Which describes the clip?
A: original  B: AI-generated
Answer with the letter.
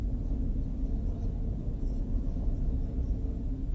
A